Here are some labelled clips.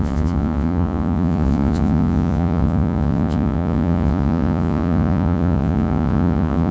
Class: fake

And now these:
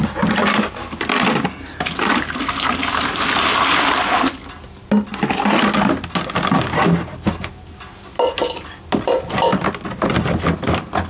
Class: real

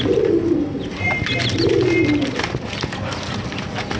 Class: real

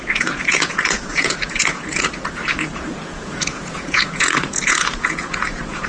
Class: fake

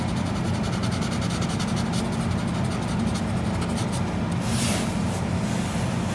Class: real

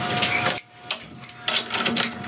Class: real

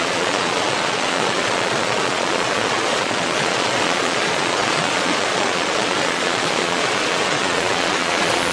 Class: fake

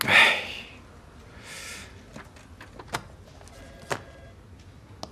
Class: real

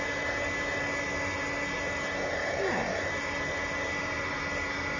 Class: real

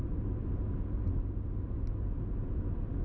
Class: real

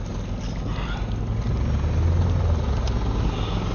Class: real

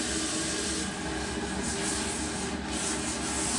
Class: real